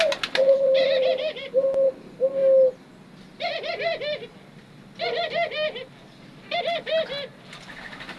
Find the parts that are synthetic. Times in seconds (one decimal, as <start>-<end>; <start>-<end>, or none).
0.4-1.9